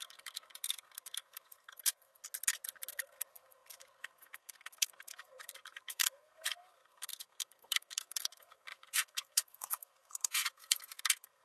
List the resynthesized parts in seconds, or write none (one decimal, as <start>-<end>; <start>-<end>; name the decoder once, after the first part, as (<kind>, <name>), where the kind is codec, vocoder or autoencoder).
0.0-2.2 (codec, SNAC); 2.9-11.4